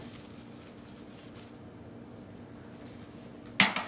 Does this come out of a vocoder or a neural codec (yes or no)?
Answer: no